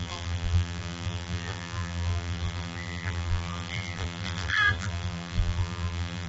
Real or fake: fake